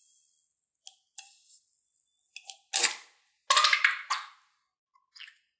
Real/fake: real